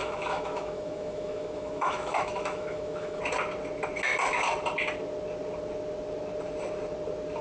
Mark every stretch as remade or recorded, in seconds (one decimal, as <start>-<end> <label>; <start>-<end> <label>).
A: 0.0-3.2 remade; 3.2-7.4 recorded

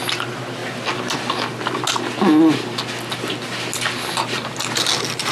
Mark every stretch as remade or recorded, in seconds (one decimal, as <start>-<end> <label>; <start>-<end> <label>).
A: 0.0-5.3 recorded